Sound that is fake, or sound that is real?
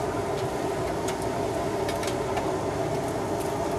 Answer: real